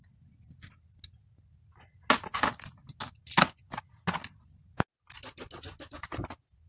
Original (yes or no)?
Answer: yes